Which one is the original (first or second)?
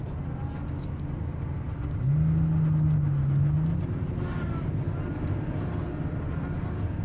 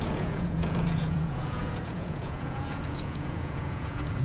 first